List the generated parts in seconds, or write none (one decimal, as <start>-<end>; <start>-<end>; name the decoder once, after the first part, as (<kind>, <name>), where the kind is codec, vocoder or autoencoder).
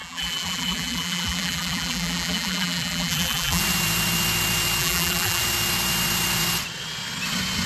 0.0-3.6 (vocoder, BigVGAN v2); 4.8-5.4